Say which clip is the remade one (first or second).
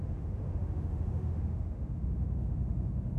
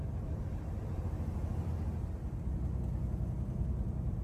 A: first